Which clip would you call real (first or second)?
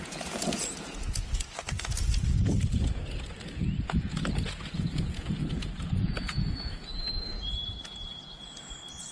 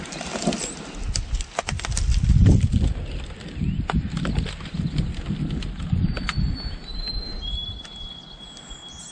second